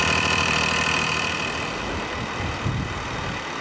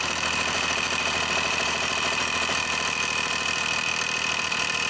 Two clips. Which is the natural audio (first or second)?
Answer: first